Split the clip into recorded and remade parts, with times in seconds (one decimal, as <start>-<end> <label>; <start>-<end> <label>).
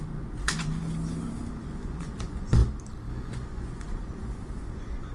0.0-0.8 remade; 0.8-1.5 recorded; 1.5-2.6 remade; 2.6-3.1 recorded; 3.1-5.1 remade